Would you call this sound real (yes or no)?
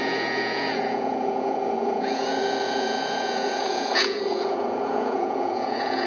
no